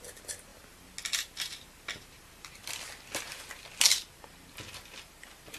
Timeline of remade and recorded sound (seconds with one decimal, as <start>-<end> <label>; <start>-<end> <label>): 0.0-5.6 recorded